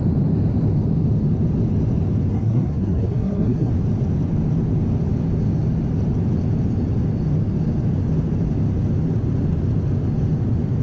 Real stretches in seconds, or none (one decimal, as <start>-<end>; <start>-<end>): 0.0-2.3; 3.7-10.8